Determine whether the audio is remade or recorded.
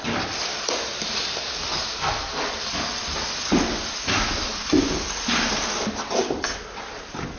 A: recorded